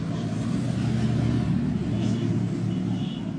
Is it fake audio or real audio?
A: real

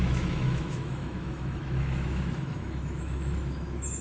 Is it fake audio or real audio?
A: fake